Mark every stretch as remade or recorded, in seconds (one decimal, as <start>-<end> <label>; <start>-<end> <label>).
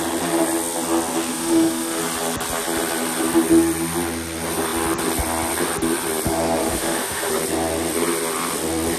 0.0-1.3 recorded; 1.3-2.0 remade; 2.0-6.6 recorded; 6.6-7.3 remade; 7.3-9.0 recorded